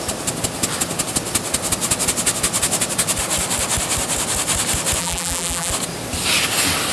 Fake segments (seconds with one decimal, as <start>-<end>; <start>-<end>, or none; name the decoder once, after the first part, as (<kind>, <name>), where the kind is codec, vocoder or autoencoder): 5.0-5.7 (vocoder, BigVGAN v2)